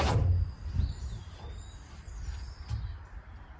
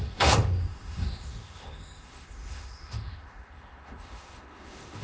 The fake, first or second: second